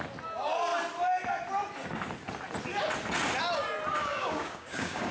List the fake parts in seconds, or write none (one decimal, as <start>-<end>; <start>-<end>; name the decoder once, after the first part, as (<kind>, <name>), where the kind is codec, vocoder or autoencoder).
4.0-5.1 (codec, DAC)